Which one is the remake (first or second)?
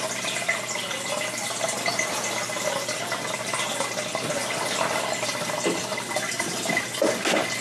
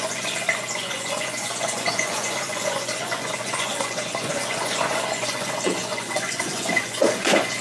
second